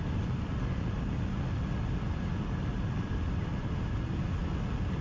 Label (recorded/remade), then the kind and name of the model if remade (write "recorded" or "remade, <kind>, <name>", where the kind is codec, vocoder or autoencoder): recorded